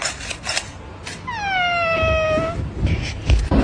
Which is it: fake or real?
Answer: real